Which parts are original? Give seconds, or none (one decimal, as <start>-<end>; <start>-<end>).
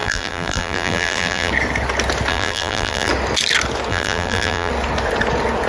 1.5-2.3; 3.1-3.9; 4.7-5.7